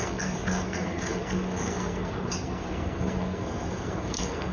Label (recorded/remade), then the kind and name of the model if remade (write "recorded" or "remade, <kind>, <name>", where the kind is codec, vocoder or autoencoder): remade, codec, SNAC